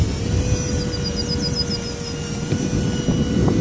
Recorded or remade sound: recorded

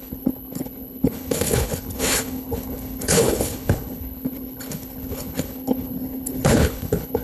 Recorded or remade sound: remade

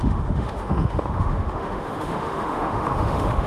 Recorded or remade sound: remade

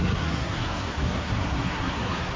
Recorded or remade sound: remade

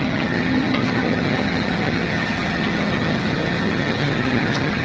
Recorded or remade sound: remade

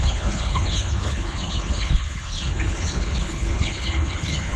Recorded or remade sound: remade